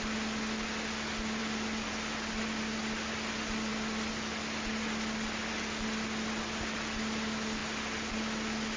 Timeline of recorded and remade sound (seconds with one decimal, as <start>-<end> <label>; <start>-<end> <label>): 0.0-8.8 recorded